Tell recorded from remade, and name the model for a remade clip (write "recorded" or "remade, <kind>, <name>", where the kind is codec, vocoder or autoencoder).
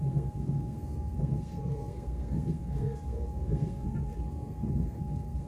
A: remade, codec, SNAC